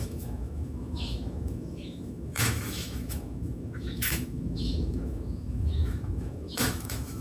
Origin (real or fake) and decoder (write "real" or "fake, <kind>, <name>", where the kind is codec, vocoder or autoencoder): fake, autoencoder, DAC-VAE